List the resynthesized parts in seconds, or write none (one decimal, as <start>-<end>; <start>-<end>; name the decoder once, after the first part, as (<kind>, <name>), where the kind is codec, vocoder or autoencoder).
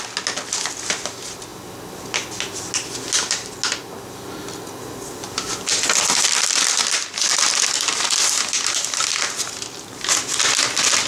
none